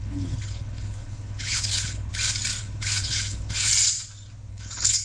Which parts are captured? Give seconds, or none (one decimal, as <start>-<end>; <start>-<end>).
2.1-2.6; 3.7-4.5